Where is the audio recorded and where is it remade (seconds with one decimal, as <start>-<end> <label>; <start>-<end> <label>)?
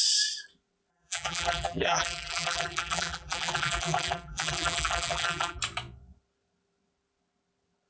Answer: 0.0-0.9 recorded; 0.9-5.6 remade; 5.6-7.9 recorded